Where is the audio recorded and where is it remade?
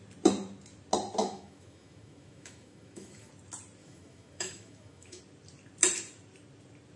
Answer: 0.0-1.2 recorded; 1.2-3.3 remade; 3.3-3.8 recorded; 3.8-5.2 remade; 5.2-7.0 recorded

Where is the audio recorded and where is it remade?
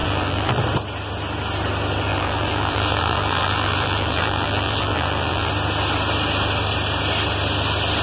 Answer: 0.0-0.6 remade; 0.6-2.1 recorded; 2.1-5.5 remade; 5.5-8.0 recorded